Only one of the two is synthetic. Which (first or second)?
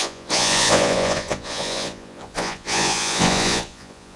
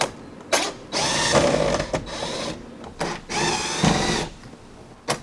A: first